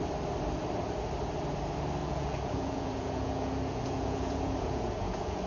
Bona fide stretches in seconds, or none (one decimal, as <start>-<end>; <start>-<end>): 0.0-2.0